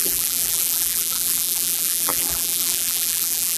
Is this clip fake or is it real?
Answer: fake